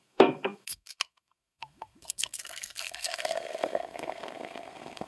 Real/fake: fake